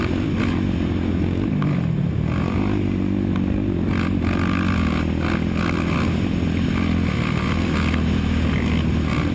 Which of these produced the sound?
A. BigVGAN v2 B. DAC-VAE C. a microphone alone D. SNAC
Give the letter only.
C